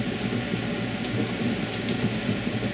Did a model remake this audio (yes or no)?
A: no